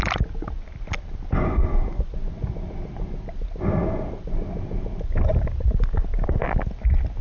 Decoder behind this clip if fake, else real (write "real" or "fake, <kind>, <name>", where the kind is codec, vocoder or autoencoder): real